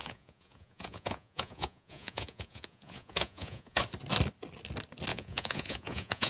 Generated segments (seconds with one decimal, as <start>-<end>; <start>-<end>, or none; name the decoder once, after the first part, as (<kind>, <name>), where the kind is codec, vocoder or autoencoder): 0.0-3.8 (vocoder, Vocos); 5.1-6.3